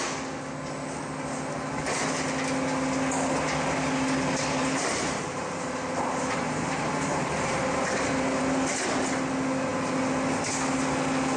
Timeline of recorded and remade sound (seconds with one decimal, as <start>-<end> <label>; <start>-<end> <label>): 0.0-4.6 recorded; 4.6-8.4 remade; 8.4-11.4 recorded